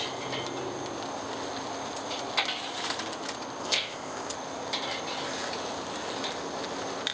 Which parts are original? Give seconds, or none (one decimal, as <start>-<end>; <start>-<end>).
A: 0.0-3.6; 4.3-7.1